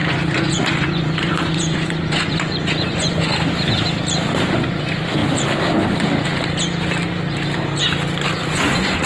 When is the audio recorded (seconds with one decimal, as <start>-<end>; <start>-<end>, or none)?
3.3-4.5; 5.2-8.5